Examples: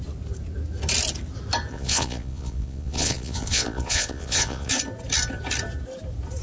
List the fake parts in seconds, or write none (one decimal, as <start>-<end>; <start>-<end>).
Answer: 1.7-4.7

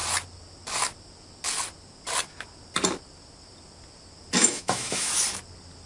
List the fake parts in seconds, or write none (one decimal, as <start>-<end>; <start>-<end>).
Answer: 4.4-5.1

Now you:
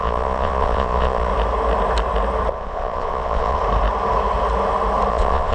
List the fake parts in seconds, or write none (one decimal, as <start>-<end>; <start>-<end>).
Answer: 0.0-1.3; 2.5-3.6; 5.1-5.5

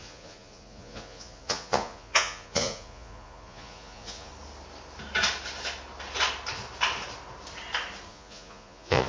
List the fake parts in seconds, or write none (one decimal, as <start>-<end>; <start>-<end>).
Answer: 0.0-4.3; 8.1-9.1

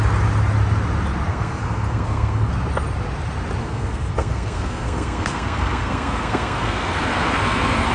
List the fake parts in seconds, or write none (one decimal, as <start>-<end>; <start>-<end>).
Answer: 1.3-2.5; 3.6-7.9